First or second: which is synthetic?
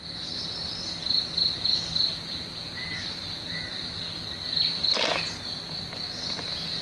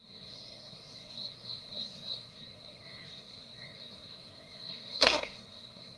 second